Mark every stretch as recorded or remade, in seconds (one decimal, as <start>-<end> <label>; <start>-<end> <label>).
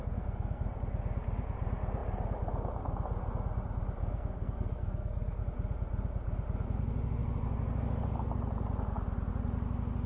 0.0-0.6 remade; 0.6-4.0 recorded; 4.0-5.4 remade; 5.4-10.1 recorded